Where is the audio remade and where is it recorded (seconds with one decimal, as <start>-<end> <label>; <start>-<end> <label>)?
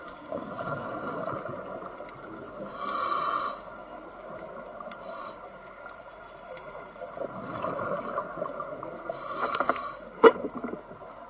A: 0.0-1.3 remade; 1.3-11.3 recorded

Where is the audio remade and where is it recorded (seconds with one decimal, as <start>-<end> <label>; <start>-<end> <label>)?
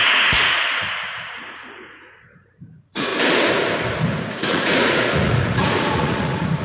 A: 0.0-3.1 remade; 3.1-4.3 recorded; 4.3-6.6 remade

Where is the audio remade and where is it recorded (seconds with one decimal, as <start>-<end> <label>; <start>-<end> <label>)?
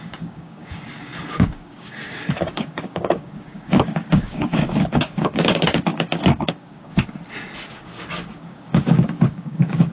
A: 0.0-6.9 remade; 6.9-7.7 recorded; 7.7-9.9 remade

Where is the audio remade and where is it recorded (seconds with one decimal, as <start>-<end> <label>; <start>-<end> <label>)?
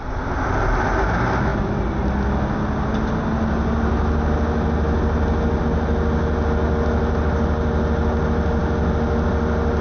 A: 0.0-9.8 recorded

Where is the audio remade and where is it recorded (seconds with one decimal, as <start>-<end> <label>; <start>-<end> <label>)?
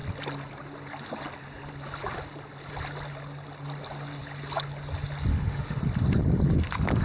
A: 0.0-5.3 recorded; 5.3-5.8 remade; 5.8-7.0 recorded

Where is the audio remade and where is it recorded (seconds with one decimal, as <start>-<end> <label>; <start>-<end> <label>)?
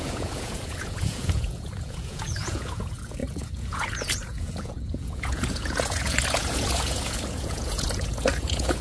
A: 0.0-8.8 remade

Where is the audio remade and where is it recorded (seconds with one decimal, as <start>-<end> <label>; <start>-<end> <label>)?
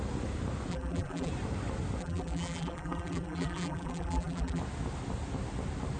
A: 0.0-0.7 recorded; 0.7-1.3 remade; 1.3-2.0 recorded; 2.0-4.6 remade; 4.6-6.0 recorded